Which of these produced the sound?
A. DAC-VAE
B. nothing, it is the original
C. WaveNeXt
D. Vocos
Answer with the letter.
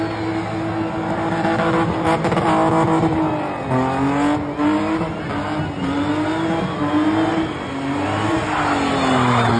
B